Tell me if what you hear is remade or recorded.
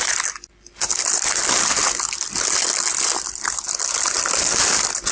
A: recorded